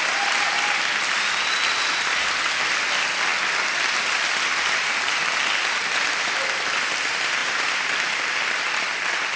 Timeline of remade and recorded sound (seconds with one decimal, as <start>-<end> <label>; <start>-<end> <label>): 0.0-7.4 recorded; 7.4-8.2 remade; 8.2-9.4 recorded